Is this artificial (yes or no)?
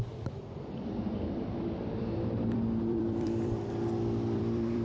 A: yes